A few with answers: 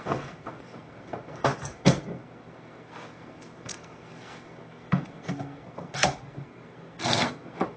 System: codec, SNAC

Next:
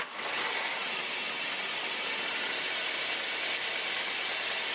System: none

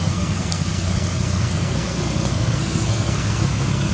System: codec, SNAC